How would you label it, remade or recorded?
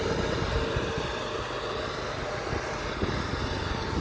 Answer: recorded